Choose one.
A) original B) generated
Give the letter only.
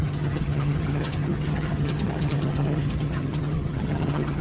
B